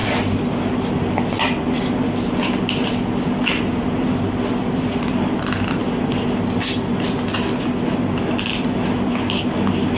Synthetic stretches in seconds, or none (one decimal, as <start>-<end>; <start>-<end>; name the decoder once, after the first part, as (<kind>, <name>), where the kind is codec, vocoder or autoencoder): none